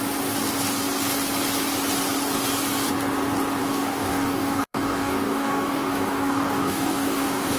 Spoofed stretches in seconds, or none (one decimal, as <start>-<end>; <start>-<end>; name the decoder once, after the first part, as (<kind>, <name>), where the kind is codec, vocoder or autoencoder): 3.6-7.6 (codec, DAC)